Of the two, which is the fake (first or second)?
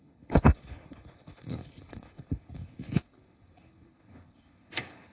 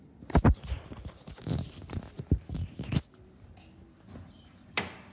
first